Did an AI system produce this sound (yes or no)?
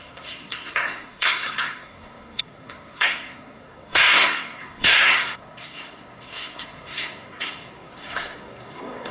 yes